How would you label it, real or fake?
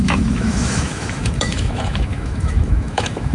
fake